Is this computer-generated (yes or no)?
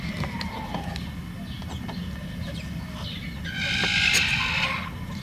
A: no